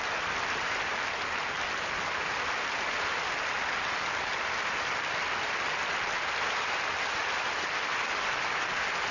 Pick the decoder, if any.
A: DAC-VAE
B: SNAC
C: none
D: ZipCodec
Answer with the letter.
C